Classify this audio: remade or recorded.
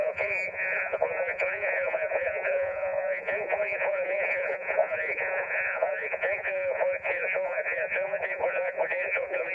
remade